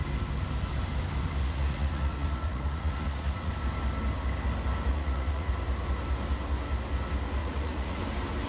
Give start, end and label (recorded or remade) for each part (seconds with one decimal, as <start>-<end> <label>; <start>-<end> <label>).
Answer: 0.0-1.4 recorded; 1.4-3.5 remade; 3.5-4.9 recorded; 4.9-5.5 remade; 5.5-7.4 recorded; 7.4-8.0 remade; 8.0-8.5 recorded